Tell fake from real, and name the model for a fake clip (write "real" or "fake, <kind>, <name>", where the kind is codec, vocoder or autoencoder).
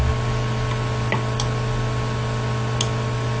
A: real